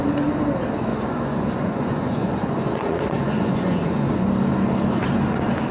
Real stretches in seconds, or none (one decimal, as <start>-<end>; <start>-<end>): 0.0-0.9; 4.3-5.7